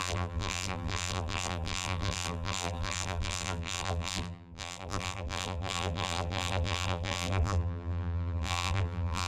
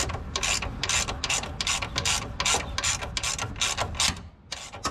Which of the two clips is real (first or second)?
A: second